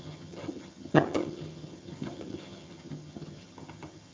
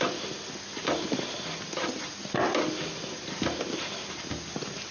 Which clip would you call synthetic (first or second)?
first